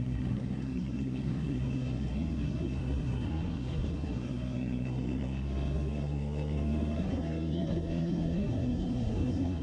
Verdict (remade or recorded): remade